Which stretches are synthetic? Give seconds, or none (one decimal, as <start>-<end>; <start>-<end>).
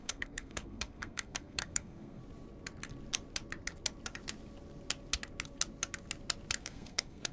0.0-2.2; 6.6-7.3